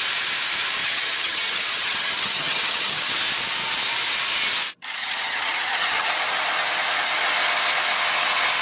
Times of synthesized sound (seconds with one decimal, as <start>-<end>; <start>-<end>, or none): 0.8-3.1; 5.0-6.1